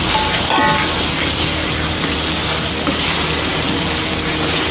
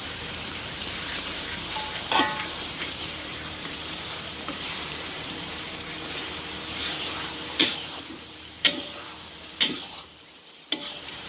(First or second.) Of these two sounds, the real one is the first